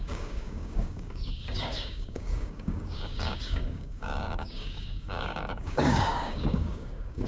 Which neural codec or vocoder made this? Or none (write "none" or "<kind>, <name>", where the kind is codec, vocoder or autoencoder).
codec, DAC